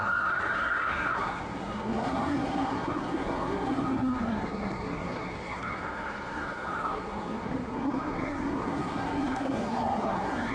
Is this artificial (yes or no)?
yes